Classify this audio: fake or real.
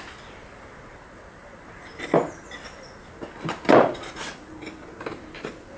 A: fake